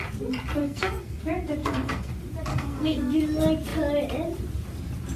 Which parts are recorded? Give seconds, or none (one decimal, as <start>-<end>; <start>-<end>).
0.0-0.6; 1.2-1.6; 2.1-2.5; 3.2-5.2